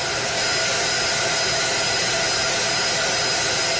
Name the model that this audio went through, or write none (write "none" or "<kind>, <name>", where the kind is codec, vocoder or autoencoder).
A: none